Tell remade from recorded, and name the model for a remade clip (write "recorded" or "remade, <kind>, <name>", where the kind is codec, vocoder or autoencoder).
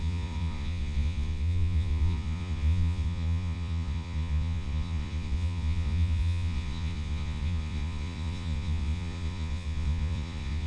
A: remade, vocoder, Vocos